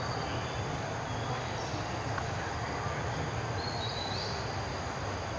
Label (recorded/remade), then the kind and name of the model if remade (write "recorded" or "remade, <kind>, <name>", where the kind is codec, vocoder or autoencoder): recorded